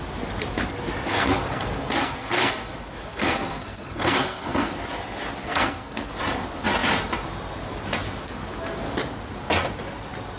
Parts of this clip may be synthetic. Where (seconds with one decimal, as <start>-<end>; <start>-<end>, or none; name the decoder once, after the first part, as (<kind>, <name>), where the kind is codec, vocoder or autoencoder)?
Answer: 1.1-2.5 (codec, SNAC); 3.1-4.7; 5.4-6.1